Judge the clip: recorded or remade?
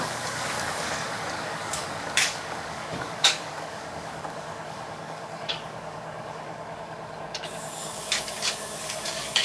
remade